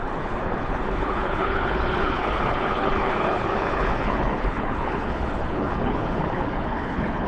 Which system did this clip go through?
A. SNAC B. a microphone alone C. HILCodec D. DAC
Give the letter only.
C